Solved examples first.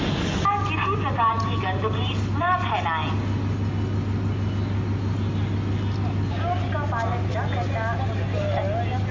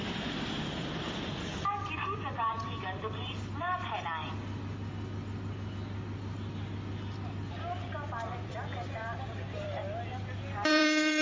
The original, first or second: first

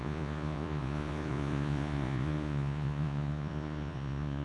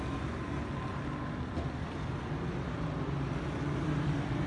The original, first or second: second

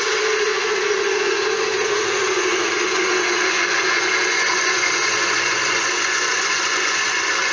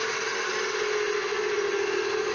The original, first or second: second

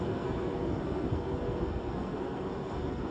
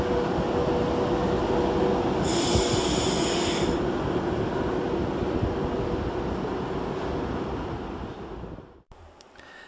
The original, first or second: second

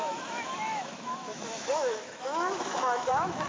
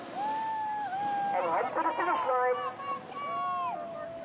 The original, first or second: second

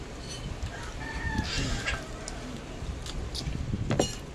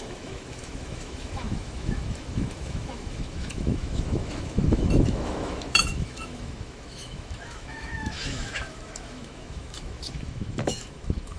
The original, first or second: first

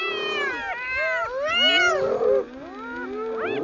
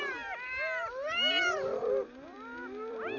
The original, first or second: first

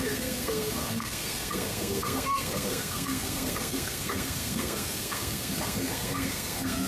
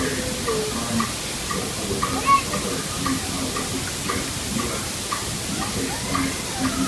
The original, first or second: second